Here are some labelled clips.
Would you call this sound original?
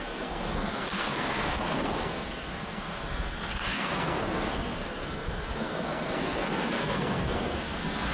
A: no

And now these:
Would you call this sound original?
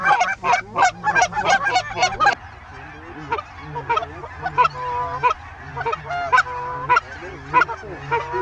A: yes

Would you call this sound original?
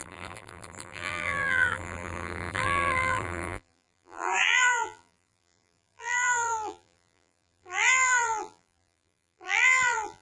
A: no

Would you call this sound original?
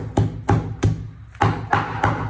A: yes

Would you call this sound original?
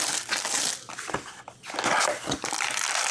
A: yes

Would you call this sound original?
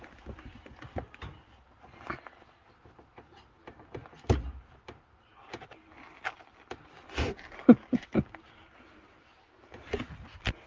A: yes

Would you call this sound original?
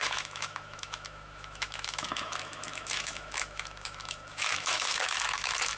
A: no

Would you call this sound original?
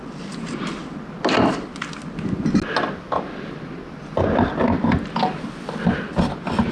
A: yes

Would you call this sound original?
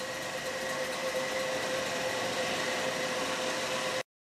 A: yes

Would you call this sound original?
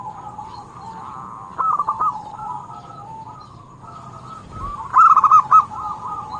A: yes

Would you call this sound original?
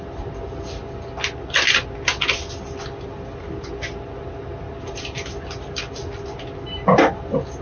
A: yes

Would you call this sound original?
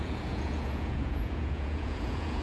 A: no